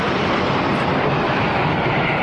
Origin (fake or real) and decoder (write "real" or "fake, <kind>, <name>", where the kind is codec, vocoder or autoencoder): real